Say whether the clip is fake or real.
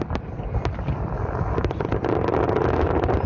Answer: real